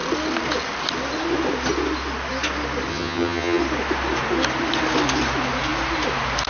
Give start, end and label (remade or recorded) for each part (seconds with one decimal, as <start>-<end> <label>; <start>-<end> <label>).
0.0-2.9 recorded; 2.9-3.6 remade; 3.6-6.5 recorded